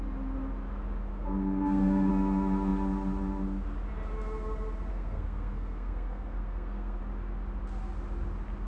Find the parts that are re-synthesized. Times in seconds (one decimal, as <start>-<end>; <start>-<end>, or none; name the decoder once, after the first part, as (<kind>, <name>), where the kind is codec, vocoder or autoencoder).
1.1-2.1 (codec, SNAC); 4.9-7.0